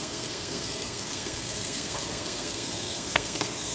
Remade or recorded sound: remade